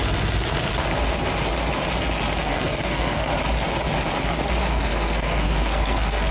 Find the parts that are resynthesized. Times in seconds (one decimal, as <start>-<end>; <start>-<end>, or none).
2.4-3.3; 4.6-6.3